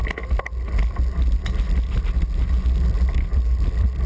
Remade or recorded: recorded